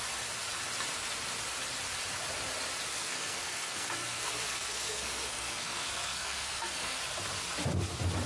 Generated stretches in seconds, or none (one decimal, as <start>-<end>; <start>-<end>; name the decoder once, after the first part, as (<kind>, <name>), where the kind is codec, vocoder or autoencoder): 2.9-7.0 (codec, SNAC)